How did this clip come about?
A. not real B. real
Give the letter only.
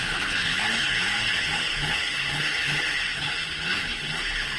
A